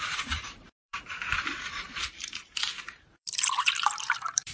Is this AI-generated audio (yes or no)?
yes